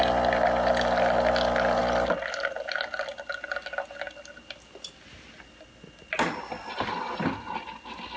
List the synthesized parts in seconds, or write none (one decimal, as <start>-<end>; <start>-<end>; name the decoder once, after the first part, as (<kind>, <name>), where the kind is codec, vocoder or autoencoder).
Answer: none